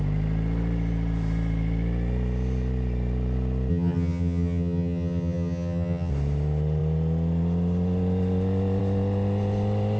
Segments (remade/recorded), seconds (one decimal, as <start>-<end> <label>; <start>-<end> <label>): 0.0-3.7 recorded; 3.7-6.1 remade; 6.1-10.0 recorded